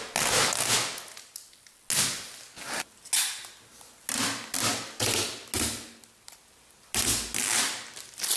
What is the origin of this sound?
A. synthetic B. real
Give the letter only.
B